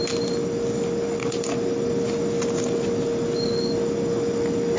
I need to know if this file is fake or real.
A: real